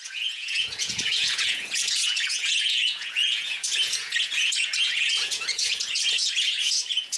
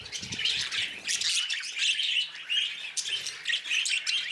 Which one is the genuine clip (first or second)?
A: second